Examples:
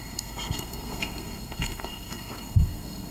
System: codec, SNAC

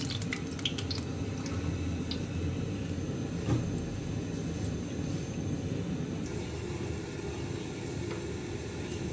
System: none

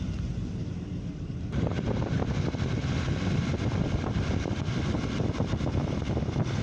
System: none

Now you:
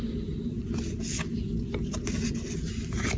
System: none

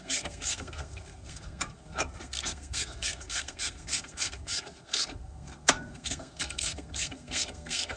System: codec, SNAC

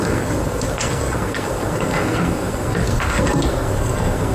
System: codec, SNAC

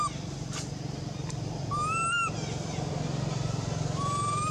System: none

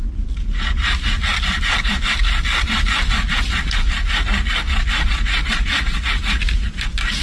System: none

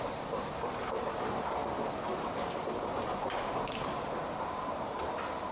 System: none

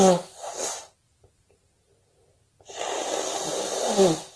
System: none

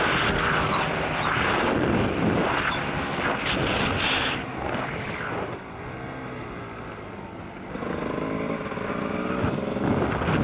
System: none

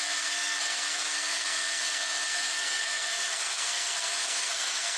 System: codec, SNAC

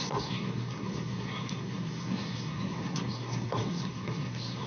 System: codec, SNAC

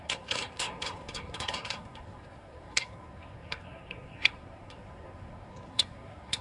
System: codec, SNAC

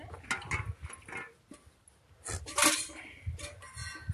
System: none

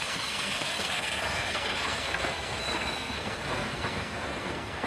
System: codec, SNAC